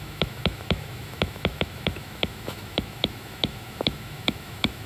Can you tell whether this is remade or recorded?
remade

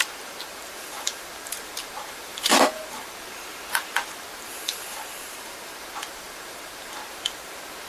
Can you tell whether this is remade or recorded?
remade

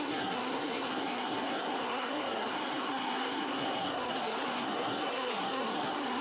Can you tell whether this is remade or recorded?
remade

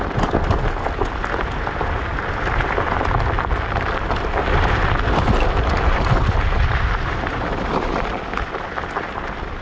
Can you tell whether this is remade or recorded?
recorded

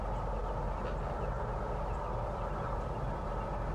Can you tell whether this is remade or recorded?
recorded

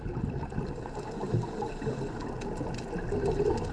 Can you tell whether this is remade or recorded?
recorded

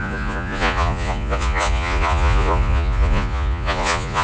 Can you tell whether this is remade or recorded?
remade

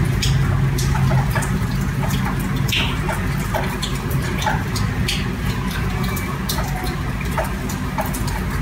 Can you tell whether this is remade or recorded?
recorded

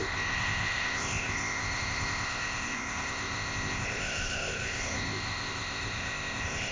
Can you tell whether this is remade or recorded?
remade